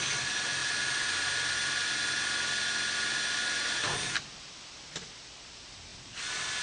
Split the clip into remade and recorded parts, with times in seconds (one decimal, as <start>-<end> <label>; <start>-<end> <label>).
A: 0.0-6.6 recorded